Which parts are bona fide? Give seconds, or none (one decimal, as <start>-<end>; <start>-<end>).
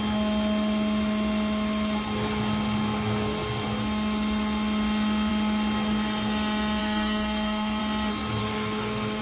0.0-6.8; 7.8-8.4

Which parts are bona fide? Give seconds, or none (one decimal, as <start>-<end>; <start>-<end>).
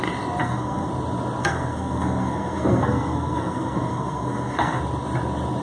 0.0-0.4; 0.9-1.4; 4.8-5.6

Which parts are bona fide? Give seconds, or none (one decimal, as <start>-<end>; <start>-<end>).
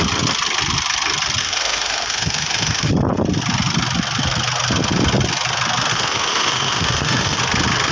0.0-1.4; 2.9-5.9; 7.4-7.9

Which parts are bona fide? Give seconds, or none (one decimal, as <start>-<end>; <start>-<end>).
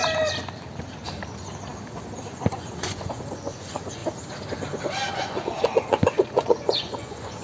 0.0-2.3; 4.0-5.1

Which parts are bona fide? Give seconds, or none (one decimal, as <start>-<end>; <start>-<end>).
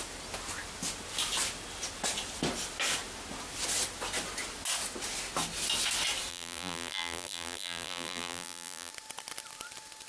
0.0-6.3; 8.9-10.1